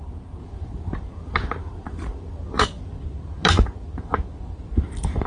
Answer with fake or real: fake